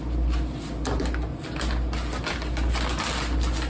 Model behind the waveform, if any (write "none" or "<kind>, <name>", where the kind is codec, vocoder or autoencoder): none